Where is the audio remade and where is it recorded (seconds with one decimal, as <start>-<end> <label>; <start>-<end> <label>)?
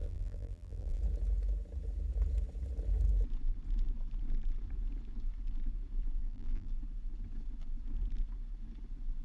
0.0-1.0 remade; 1.0-6.2 recorded; 6.2-6.7 remade; 6.7-9.2 recorded